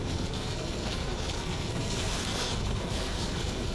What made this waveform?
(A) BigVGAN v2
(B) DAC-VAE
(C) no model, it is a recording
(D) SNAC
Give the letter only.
D